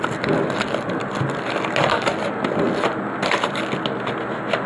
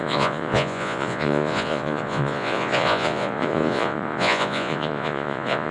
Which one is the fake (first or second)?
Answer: second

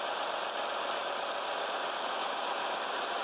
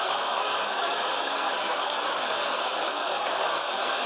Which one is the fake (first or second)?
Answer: second